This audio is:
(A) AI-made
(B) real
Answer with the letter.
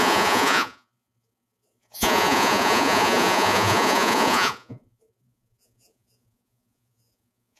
A